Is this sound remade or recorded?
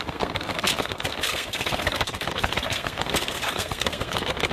remade